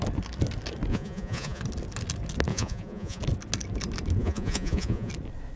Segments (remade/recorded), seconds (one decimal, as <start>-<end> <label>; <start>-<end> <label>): 0.0-0.9 recorded; 0.9-1.6 remade; 1.6-2.5 recorded; 2.5-3.2 remade; 3.2-4.2 recorded; 4.2-5.1 remade; 5.1-5.6 recorded